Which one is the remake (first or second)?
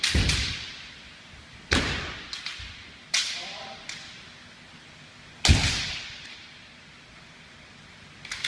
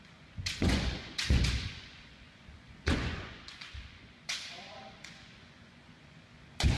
second